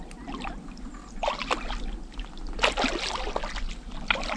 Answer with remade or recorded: recorded